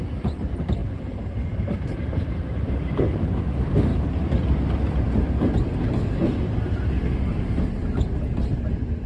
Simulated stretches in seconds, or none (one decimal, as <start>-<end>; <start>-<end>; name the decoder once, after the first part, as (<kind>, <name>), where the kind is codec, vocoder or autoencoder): 0.0-3.9 (vocoder, BigVGAN v2)